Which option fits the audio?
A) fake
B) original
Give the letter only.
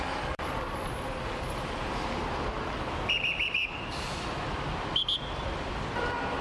A